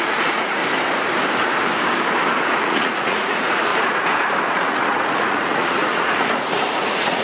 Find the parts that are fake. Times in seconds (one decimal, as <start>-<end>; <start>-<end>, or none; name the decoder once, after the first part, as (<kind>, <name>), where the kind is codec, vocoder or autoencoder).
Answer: 0.0-0.6 (vocoder, Vocos); 2.5-3.7; 4.5-7.2